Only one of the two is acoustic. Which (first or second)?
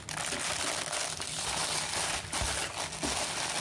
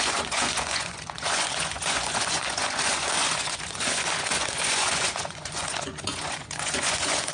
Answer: first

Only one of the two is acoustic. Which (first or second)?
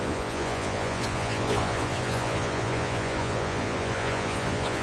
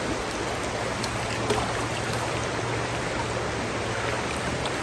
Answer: second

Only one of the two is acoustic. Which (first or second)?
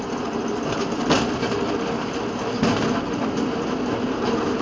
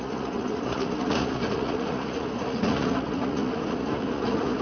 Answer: first